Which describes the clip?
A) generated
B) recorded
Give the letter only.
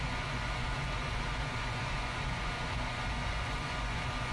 A